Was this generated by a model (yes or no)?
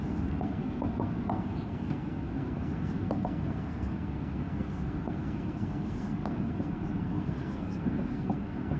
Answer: yes